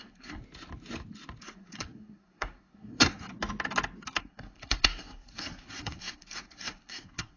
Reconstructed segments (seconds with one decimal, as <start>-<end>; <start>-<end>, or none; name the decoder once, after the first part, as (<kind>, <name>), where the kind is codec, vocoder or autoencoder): 0.0-0.4 (codec, SNAC); 1.4-3.3; 4.2-7.4